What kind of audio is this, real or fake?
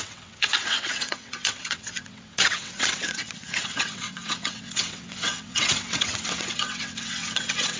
fake